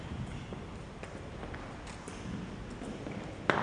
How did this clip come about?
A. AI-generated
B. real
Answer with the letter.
B